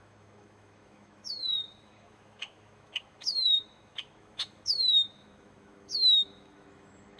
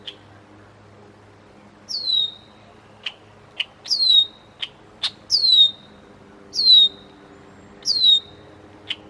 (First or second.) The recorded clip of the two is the second